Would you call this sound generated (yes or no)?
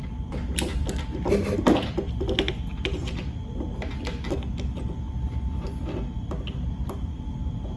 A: no